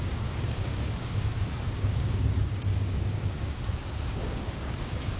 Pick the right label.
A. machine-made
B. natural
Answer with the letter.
A